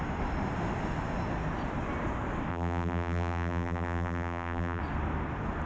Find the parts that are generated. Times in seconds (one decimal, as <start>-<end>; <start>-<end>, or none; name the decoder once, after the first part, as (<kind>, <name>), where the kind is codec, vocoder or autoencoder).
2.5-4.8 (vocoder, BigVGAN v2)